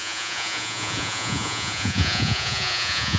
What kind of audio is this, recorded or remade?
remade